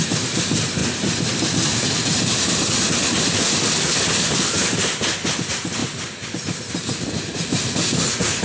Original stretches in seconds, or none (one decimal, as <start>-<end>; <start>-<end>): 0.0-8.4